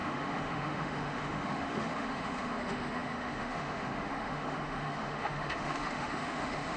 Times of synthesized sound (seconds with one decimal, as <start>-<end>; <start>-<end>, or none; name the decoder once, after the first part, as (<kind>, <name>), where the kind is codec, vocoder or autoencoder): 0.0-6.8 (autoencoder, DAC-VAE)